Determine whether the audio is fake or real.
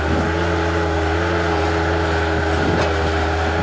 real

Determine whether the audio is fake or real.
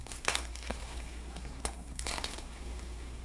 fake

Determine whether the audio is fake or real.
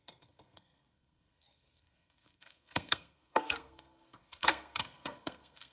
fake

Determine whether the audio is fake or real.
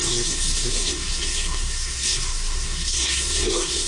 fake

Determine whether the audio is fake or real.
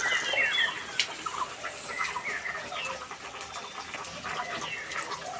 real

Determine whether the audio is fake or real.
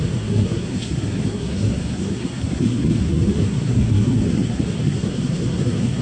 fake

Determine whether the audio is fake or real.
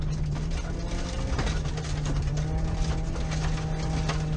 real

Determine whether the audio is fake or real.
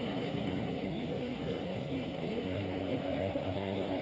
fake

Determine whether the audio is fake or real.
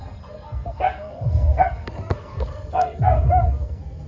fake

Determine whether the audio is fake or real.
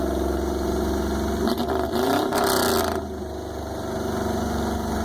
real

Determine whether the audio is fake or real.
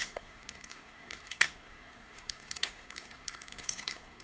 fake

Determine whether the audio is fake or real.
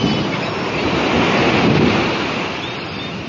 real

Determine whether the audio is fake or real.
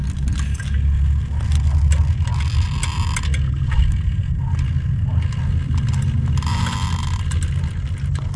real